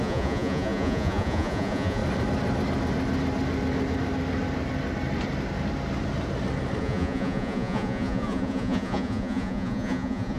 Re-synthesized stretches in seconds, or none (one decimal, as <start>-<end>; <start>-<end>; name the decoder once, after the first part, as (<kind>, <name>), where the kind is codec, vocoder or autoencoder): 0.0-2.0 (vocoder, Vocos); 6.8-10.4